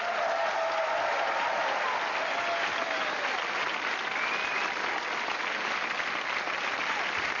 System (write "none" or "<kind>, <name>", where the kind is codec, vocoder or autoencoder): none